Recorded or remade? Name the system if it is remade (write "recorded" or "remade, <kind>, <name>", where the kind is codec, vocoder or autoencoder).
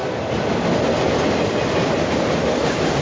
recorded